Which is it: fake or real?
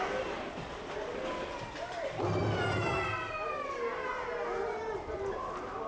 real